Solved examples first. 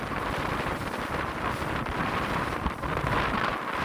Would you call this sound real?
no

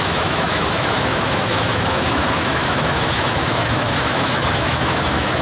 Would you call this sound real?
no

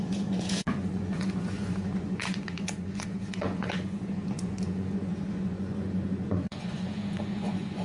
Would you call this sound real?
no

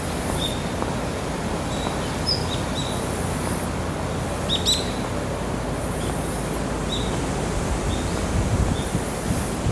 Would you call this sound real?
yes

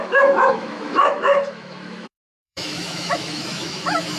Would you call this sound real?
no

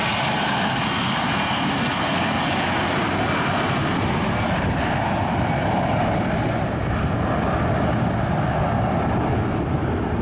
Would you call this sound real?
yes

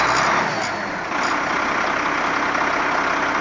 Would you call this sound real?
yes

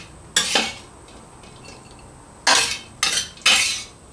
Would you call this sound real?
yes